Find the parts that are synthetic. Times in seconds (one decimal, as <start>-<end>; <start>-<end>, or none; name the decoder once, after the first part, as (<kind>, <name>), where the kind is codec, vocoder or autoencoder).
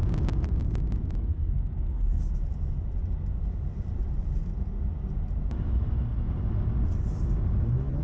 1.2-2.2 (codec, SNAC)